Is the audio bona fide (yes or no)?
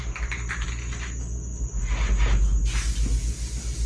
yes